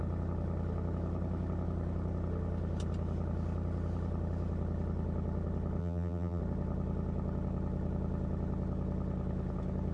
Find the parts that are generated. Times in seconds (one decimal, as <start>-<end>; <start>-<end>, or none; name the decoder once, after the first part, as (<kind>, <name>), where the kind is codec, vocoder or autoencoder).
5.8-6.4 (vocoder, BigVGAN v2)

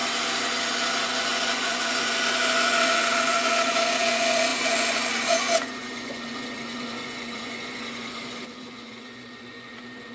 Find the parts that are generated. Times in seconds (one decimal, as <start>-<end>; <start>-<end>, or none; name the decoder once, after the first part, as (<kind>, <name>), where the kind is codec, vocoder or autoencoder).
1.0-10.1 (vocoder, Vocos)

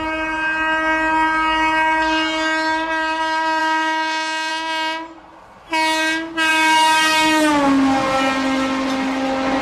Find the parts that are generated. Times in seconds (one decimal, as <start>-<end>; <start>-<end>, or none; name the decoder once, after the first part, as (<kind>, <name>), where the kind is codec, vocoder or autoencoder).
3.6-4.5 (codec, DAC); 6.5-7.5